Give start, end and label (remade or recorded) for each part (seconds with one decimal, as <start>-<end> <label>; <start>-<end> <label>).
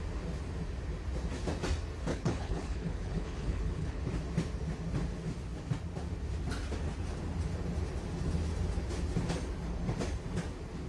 0.0-2.1 recorded; 2.1-4.0 remade; 4.0-10.9 recorded